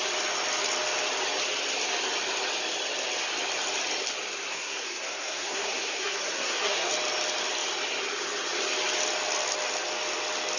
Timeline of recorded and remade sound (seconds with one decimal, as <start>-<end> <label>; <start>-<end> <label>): 0.0-4.5 recorded; 4.5-6.9 remade; 6.9-10.6 recorded

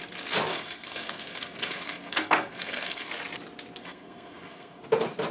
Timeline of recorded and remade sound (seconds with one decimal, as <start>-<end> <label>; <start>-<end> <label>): 0.0-0.5 recorded; 0.5-3.1 remade; 3.1-3.8 recorded; 3.8-4.8 remade; 4.8-5.3 recorded

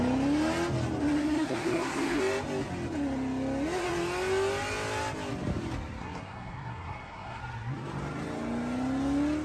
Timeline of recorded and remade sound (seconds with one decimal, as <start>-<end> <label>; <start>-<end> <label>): 0.0-1.2 recorded; 1.2-2.2 remade; 2.2-6.0 recorded; 6.0-7.4 remade; 7.4-9.4 recorded

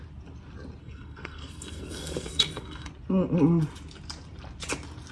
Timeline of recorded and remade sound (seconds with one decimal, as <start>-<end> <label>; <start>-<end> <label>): 0.0-0.8 recorded; 0.8-2.9 remade; 2.9-5.1 recorded

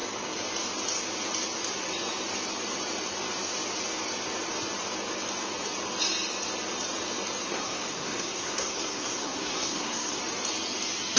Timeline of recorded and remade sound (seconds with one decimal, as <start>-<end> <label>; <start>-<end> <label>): 0.0-7.4 recorded; 7.4-10.2 remade; 10.2-11.2 recorded